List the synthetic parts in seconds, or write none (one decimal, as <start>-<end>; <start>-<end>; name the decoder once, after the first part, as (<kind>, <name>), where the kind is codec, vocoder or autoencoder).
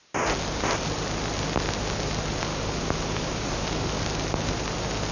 2.5-3.9 (codec, DAC)